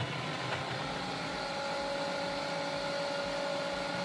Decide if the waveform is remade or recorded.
recorded